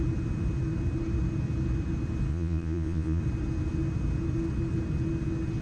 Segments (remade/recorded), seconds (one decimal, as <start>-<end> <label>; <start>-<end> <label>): 0.0-2.3 recorded; 2.3-3.2 remade; 3.2-5.6 recorded